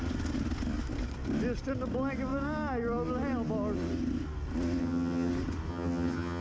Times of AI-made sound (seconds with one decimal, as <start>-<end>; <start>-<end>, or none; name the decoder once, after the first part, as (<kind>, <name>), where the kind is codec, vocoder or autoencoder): 4.8-5.3 (vocoder, HiFi-GAN); 5.7-6.4